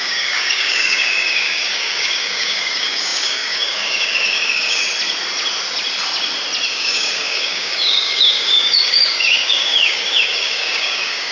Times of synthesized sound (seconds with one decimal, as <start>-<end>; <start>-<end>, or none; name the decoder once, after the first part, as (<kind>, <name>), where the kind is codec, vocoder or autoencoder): 0.0-4.8 (codec, DAC); 6.7-11.3